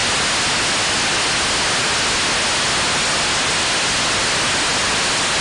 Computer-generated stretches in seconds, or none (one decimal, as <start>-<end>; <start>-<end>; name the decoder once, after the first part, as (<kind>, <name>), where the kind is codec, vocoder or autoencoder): none